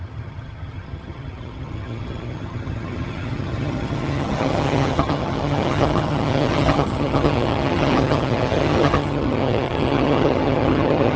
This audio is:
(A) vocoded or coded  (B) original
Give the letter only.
A